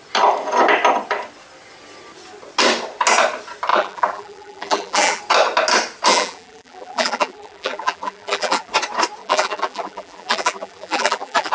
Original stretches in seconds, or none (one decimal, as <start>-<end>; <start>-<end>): 0.0-3.7; 5.2-6.1; 8.7-9.2